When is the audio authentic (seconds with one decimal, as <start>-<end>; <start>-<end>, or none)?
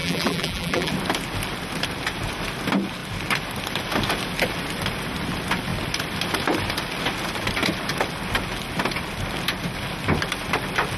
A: 0.9-11.0